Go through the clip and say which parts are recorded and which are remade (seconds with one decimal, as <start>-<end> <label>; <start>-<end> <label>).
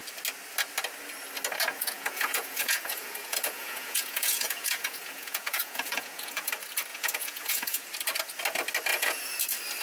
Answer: 0.0-1.7 recorded; 1.7-6.5 remade; 6.5-6.9 recorded; 6.9-7.8 remade; 7.8-8.9 recorded; 8.9-9.4 remade; 9.4-9.8 recorded